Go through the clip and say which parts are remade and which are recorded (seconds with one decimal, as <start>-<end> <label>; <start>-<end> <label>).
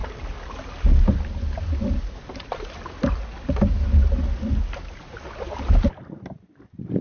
0.0-7.0 recorded